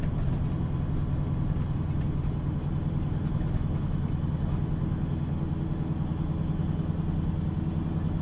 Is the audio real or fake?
real